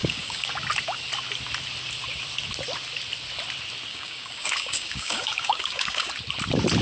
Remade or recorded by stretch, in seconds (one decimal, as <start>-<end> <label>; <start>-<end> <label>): 0.0-0.5 remade; 0.5-3.9 recorded; 3.9-6.1 remade; 6.1-6.8 recorded